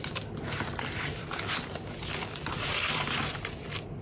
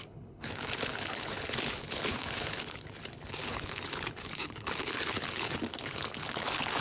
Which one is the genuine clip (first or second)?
first